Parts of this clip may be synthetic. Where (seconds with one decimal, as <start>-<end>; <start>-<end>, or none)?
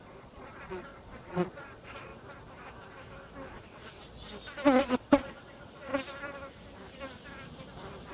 0.0-2.1; 3.5-4.0; 4.8-5.9